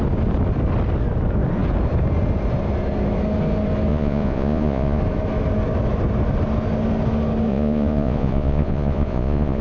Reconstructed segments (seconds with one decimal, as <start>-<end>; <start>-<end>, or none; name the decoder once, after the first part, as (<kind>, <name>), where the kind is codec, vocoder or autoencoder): 3.9-5.0 (vocoder, Vocos); 7.5-9.6

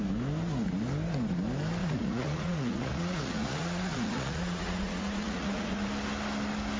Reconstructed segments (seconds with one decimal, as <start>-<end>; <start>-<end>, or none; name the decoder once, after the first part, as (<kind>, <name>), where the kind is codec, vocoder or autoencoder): 1.8-5.9 (vocoder, Vocos)

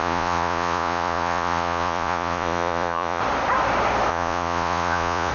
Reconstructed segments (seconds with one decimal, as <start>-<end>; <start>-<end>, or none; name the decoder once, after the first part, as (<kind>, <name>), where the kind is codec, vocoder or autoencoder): 0.0-3.2 (vocoder, Vocos); 4.1-5.3

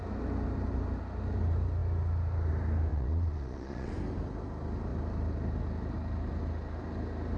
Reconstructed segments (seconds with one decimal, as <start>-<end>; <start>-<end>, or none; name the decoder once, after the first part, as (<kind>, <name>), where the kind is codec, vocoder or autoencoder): 2.9-3.9 (vocoder, Vocos)

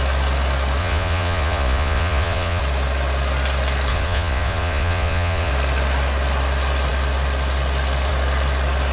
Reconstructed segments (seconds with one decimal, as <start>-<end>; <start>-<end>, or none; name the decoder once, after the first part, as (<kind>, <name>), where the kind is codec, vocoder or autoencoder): 0.8-2.6 (vocoder, Vocos); 3.9-5.5

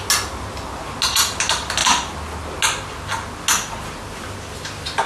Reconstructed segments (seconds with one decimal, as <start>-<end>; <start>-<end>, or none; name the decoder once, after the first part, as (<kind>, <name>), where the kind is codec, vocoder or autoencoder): none

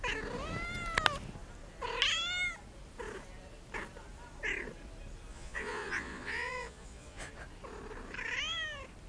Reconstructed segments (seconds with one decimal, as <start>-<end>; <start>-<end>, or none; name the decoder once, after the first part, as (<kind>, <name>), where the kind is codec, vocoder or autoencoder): 5.3-7.3 (vocoder, Vocos)